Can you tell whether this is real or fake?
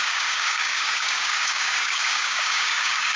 fake